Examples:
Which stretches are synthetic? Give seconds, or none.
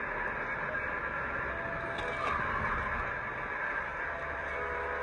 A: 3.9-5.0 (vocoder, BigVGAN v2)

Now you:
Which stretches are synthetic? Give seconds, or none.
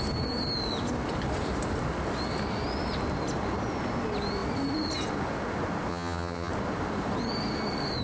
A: 5.9-6.5 (vocoder, HiFi-GAN)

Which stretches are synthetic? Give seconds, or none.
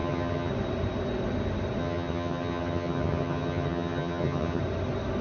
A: 0.0-0.5 (vocoder, HiFi-GAN); 1.8-4.6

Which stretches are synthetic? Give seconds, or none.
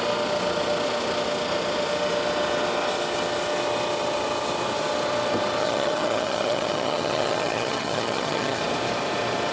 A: 5.6-8.6 (vocoder, HiFi-GAN)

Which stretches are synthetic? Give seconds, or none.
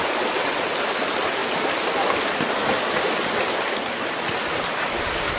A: none